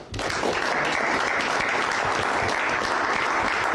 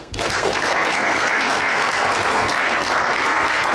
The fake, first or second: second